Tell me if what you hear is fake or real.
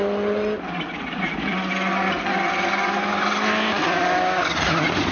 real